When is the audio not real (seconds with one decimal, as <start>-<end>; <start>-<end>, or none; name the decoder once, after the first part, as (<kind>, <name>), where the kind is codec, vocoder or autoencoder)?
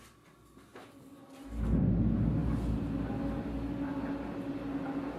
none